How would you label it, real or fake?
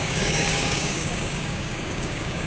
fake